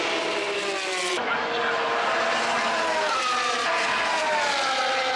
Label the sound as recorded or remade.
recorded